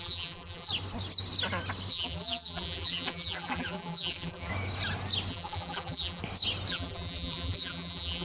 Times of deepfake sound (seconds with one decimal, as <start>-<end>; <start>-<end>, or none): 0.0-0.7; 1.9-4.5; 5.3-6.2; 6.7-8.2